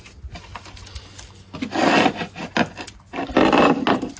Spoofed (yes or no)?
no